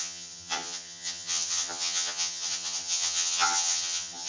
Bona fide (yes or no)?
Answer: no